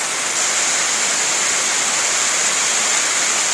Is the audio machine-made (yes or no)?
no